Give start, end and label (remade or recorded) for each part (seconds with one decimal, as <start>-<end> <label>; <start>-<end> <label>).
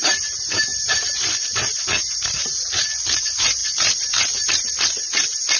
0.0-3.6 remade; 3.6-4.5 recorded; 4.5-5.6 remade